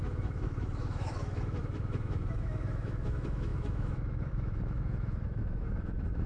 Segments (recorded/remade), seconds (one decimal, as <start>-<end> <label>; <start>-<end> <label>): 0.0-6.3 remade